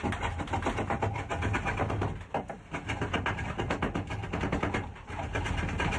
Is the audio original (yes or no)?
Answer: yes